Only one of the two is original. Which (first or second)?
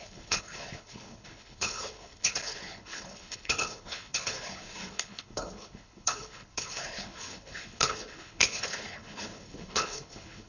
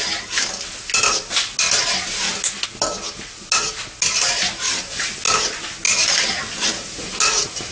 second